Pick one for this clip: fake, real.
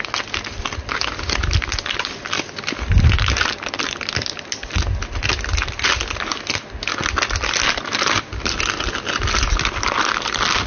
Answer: real